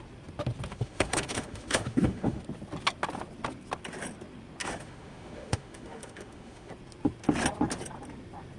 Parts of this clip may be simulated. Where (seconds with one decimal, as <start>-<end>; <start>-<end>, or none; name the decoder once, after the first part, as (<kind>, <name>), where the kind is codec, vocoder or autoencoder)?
0.7-2.4 (autoencoder, DAC-VAE); 4.6-6.7